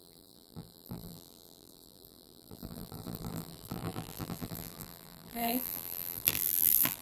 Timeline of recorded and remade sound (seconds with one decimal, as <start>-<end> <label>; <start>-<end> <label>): 0.0-7.0 remade